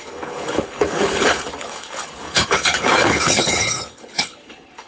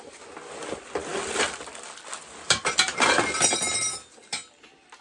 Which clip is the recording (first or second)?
second